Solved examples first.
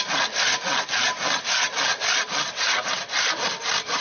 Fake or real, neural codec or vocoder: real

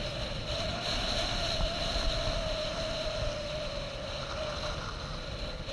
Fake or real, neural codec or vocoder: real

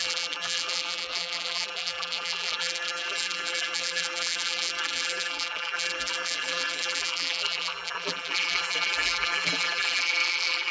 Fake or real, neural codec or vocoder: fake, vocoder, BigVGAN v2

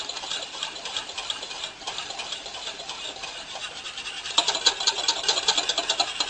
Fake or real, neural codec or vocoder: fake, vocoder, BigVGAN v2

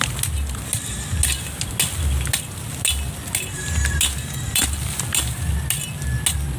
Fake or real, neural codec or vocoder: real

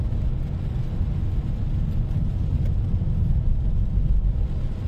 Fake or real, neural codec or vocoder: real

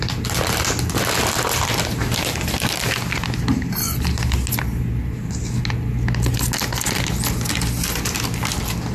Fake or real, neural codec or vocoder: real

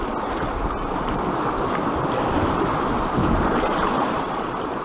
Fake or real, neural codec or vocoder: real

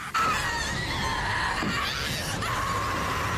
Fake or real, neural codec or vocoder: real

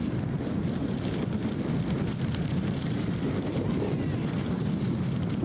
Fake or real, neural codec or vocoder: real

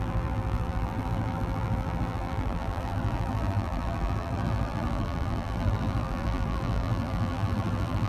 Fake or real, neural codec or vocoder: fake, vocoder, BigVGAN v2